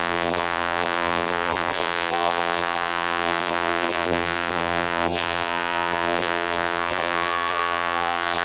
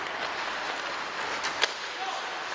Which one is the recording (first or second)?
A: second